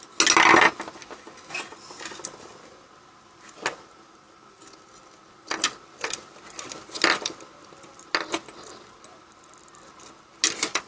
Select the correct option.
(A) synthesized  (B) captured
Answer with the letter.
B